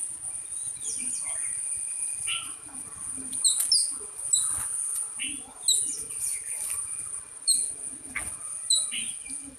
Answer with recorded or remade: recorded